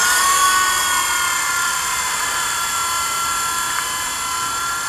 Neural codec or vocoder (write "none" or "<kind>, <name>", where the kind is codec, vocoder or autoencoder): none